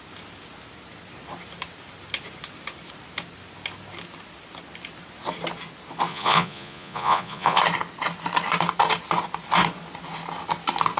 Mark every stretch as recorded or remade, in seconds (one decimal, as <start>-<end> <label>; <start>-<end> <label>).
0.0-6.1 recorded; 6.1-7.6 remade; 7.6-11.0 recorded